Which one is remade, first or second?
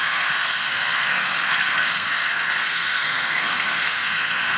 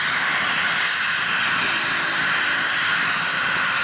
first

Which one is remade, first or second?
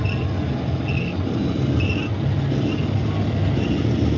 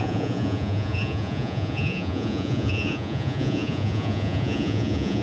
second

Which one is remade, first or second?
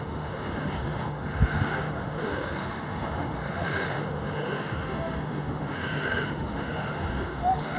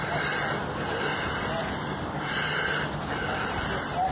first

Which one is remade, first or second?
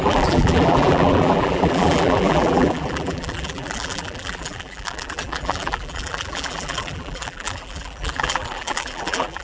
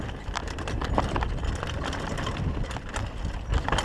first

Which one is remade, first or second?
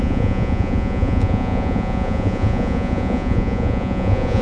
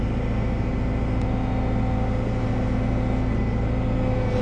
first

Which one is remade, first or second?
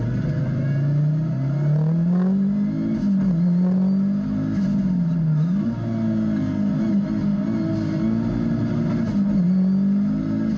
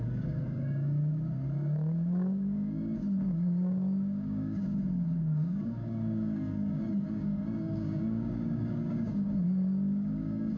second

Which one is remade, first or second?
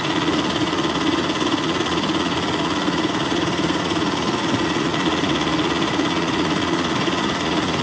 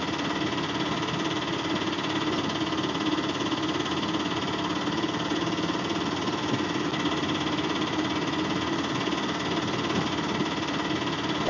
first